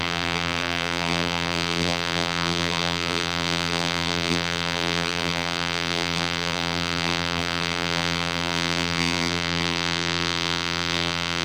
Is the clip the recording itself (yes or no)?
no